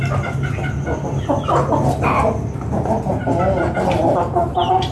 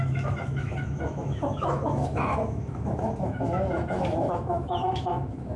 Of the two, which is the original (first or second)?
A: first